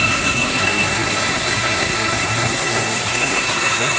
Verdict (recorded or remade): remade